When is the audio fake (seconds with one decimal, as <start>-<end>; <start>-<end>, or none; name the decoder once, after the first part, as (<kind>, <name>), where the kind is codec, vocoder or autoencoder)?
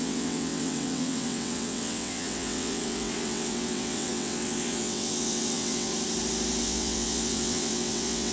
0.0-5.9 (vocoder, WaveNeXt); 6.6-8.3